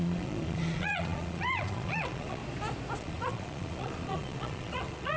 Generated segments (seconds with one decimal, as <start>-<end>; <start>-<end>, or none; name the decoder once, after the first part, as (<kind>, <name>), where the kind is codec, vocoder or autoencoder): 0.0-2.4 (vocoder, Vocos); 3.0-5.2

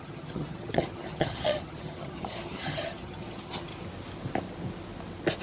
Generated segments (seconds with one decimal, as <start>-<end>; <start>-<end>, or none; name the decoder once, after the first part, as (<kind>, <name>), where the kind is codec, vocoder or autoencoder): 0.0-3.7 (vocoder, HiFi-GAN)

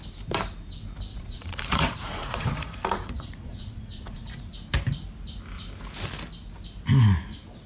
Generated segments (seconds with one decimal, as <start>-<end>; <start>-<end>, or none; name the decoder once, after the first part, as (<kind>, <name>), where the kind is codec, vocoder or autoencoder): 1.1-4.3 (vocoder, Vocos)

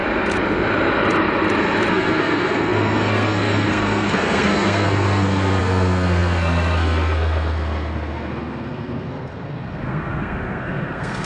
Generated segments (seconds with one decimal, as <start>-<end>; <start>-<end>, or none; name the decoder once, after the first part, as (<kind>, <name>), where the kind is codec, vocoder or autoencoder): 1.9-11.2 (codec, SNAC)